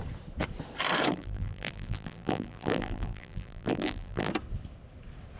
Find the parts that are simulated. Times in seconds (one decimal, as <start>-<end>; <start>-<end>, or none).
1.1-4.3